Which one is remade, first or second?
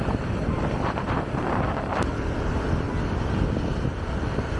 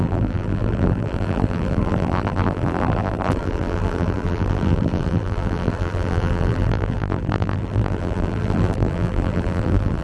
second